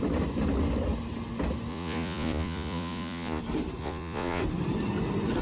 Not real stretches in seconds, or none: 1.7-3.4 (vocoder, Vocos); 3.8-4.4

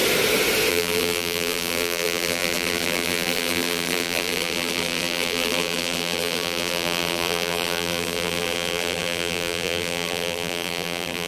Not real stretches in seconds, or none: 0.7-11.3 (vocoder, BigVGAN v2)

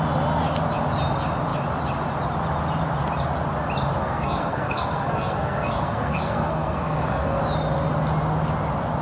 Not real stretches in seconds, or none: 4.0-7.4 (codec, SNAC)

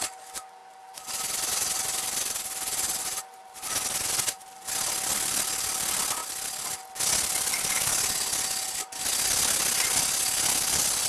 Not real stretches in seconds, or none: none

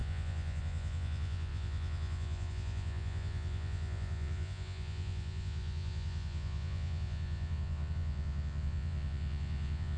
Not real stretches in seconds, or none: 0.0-10.0 (vocoder, Vocos)

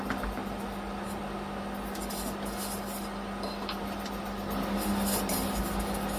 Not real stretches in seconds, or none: none

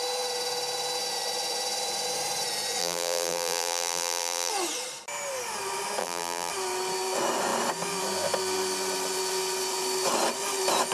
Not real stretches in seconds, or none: 2.8-4.5 (vocoder, BigVGAN v2); 6.0-6.5